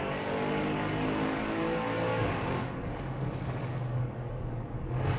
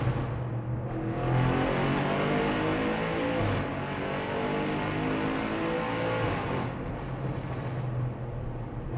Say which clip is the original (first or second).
second